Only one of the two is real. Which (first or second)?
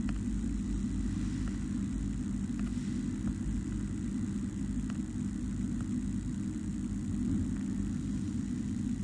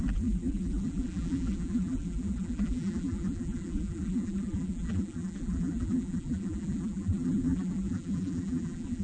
first